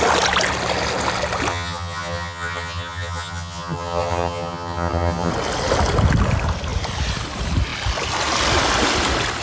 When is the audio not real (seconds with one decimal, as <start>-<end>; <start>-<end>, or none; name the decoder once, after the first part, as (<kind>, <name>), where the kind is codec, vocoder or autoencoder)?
1.5-5.3 (vocoder, HiFi-GAN)